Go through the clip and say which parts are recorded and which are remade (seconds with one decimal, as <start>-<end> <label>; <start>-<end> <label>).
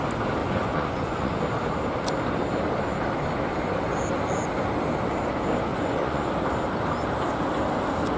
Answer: 0.0-0.4 recorded; 0.4-1.4 remade; 1.4-5.7 recorded; 5.7-6.3 remade; 6.3-8.2 recorded